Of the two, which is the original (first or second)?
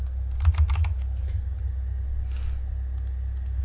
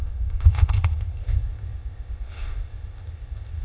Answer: first